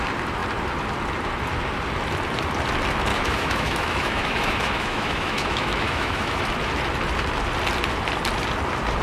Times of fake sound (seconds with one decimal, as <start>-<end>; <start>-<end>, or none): 3.1-6.4